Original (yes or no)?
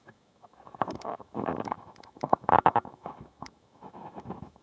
no